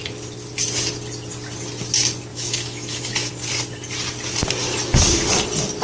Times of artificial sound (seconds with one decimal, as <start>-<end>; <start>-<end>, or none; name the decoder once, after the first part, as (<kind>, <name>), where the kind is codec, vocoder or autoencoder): 2.3-3.3 (autoencoder, DAC-VAE)